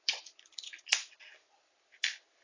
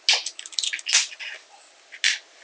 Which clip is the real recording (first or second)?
second